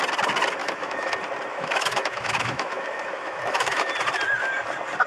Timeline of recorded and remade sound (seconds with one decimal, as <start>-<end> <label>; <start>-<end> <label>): 0.0-0.6 recorded; 0.6-1.1 remade; 1.1-1.5 recorded; 1.5-3.9 remade; 3.9-5.1 recorded